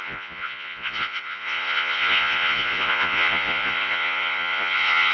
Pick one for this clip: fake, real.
fake